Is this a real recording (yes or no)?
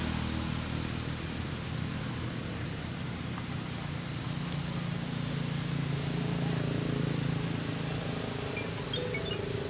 yes